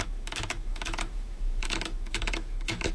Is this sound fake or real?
fake